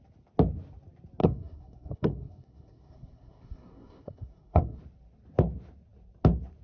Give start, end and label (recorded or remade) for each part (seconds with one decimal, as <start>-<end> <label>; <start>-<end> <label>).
0.0-1.2 recorded; 1.2-4.8 remade; 4.8-6.6 recorded